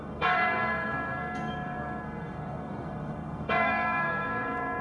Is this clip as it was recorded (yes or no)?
no